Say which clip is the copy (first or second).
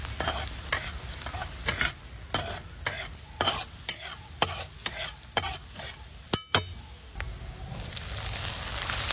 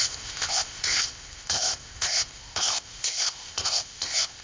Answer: second